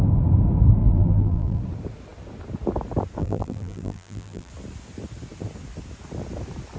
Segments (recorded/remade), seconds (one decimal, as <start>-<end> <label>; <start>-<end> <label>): 0.0-0.8 recorded; 0.8-1.6 remade; 1.6-3.2 recorded; 3.2-4.5 remade; 4.5-6.8 recorded